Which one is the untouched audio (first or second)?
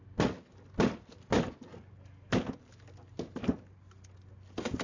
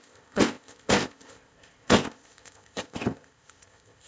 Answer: first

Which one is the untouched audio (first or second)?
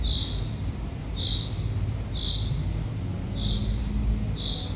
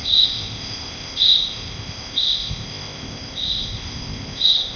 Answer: first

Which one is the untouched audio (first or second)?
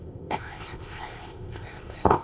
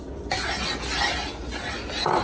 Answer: second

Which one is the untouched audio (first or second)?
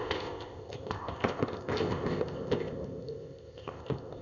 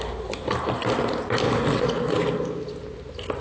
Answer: second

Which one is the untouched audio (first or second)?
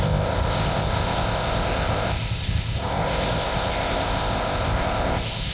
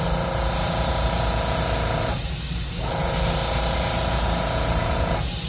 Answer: second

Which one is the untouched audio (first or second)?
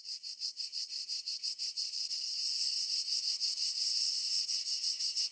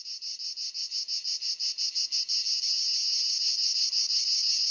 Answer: second